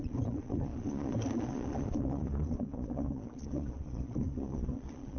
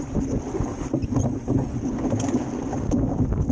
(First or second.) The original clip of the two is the second